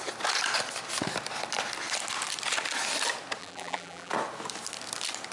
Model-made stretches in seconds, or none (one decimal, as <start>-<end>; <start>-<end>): 3.4-4.1